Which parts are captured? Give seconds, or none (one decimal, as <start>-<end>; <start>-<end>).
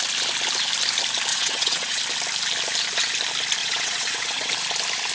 0.0-1.3; 2.0-3.6; 4.5-5.1